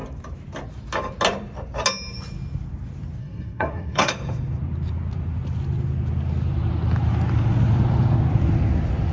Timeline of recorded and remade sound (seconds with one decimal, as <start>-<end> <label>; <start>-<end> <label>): 0.0-3.2 recorded; 3.2-4.1 remade; 4.1-9.1 recorded